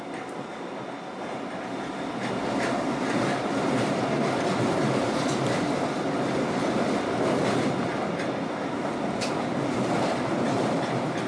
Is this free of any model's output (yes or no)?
yes